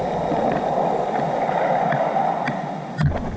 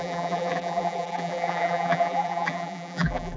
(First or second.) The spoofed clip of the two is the second